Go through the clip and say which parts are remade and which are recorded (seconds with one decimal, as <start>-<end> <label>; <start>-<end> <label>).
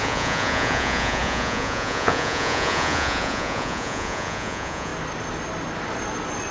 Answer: 0.0-4.9 remade; 4.9-6.5 recorded